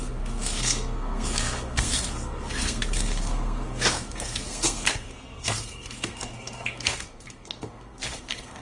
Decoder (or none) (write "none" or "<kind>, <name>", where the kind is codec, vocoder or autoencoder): codec, SNAC